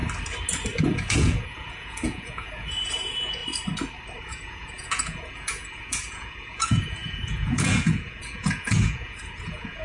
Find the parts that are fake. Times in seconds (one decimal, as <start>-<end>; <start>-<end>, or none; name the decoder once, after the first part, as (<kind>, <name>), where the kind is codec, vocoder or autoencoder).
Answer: 0.8-3.4 (vocoder, Vocos); 4.2-9.8